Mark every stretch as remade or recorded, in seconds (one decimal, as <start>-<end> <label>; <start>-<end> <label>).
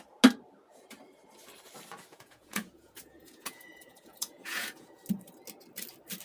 0.0-2.1 recorded; 2.1-5.0 remade; 5.0-6.2 recorded